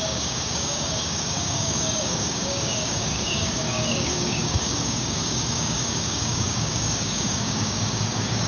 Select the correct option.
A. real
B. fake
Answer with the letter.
B